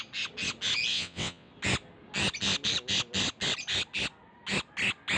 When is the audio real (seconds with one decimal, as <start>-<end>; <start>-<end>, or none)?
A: 0.0-0.9; 1.5-5.2